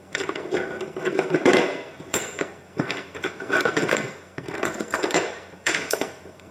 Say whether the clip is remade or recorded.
remade